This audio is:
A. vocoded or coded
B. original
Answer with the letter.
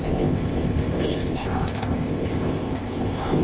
A